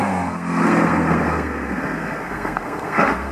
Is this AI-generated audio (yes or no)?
yes